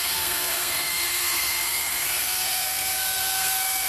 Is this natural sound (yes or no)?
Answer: no